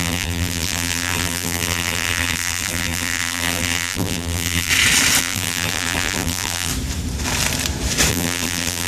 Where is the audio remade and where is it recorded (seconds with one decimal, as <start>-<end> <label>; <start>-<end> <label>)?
0.0-4.7 remade; 4.7-5.2 recorded; 5.2-6.7 remade; 6.7-8.1 recorded; 8.1-8.9 remade

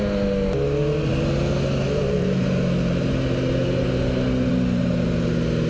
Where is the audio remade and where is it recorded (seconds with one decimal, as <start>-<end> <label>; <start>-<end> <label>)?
0.0-5.7 recorded

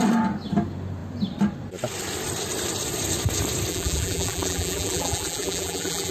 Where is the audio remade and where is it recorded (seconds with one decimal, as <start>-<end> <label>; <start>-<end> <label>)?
0.0-3.7 recorded; 3.7-6.1 remade

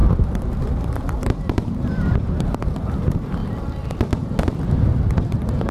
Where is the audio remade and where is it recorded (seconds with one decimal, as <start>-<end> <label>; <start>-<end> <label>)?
0.0-3.4 remade; 3.4-5.7 recorded